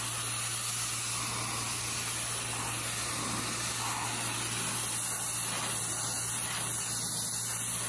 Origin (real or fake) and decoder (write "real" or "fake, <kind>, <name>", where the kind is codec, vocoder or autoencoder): real